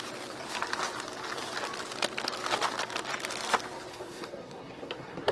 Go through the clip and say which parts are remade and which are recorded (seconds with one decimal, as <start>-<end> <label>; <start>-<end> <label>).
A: 0.0-3.9 recorded; 3.9-5.3 remade